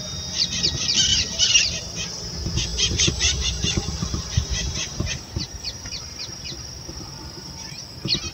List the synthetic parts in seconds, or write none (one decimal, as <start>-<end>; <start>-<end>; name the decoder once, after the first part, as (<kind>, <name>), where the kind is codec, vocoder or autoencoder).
1.1-1.6 (vocoder, BigVGAN v2); 2.7-7.7